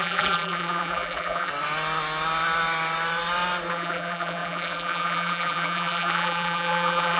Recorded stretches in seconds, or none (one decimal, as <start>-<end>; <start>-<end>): 1.5-3.7